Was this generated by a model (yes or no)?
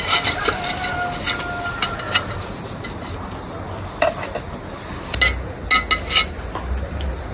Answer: no